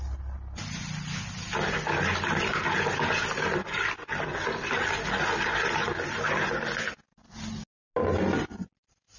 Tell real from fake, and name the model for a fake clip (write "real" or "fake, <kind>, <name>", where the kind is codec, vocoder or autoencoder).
real